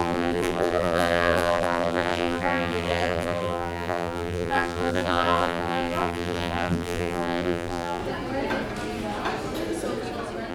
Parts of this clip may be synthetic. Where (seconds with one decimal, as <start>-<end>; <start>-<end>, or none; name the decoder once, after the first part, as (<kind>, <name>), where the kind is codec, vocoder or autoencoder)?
0.0-8.0 (vocoder, BigVGAN v2)